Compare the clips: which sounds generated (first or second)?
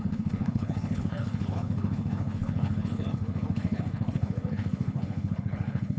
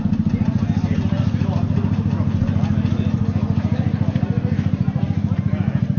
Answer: first